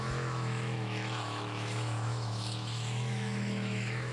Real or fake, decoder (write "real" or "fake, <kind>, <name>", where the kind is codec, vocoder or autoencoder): fake, autoencoder, DAC-VAE